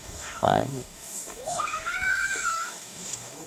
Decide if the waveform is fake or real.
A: fake